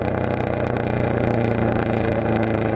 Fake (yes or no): yes